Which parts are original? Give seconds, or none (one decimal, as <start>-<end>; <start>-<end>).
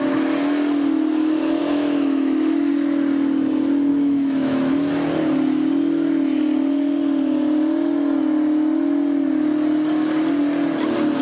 0.0-1.6; 2.7-3.9; 4.7-11.2